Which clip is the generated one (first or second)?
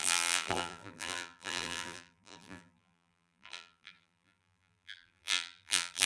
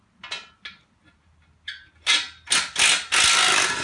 first